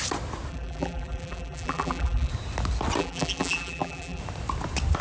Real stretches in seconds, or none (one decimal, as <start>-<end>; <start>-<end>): 0.0-0.5; 2.3-3.0; 4.2-5.0